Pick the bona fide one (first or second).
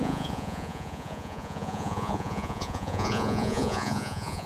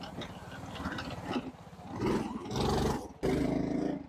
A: second